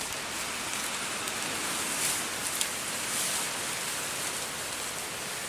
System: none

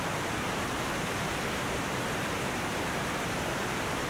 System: vocoder, BigVGAN v2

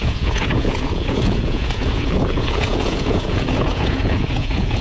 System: vocoder, Vocos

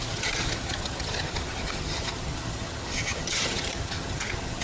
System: vocoder, HiFi-GAN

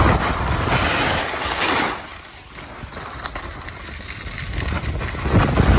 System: none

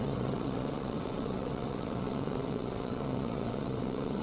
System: vocoder, WaveNeXt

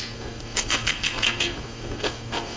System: codec, SNAC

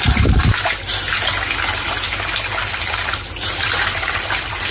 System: none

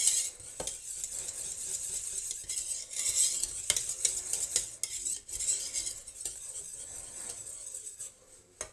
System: none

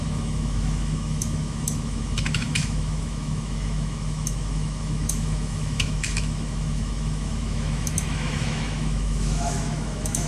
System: autoencoder, DAC-VAE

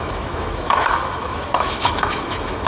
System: autoencoder, DAC-VAE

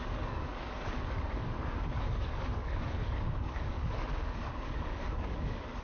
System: codec, DAC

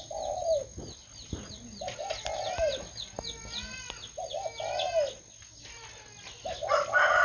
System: none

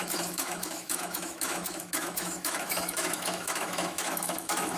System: autoencoder, DAC-VAE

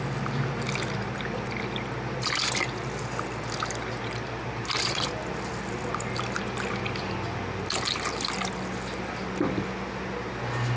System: none